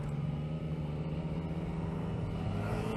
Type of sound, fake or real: real